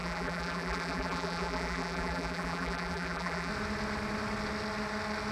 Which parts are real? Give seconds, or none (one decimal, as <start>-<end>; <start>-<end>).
3.5-5.3